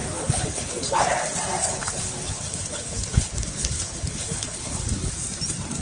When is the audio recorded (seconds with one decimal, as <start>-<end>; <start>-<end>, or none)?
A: 1.2-1.6; 5.1-5.8